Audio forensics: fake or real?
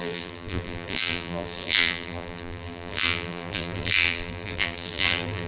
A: fake